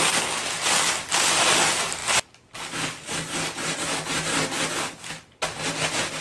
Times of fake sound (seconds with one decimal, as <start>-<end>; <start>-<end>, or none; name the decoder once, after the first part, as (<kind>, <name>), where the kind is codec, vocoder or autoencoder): none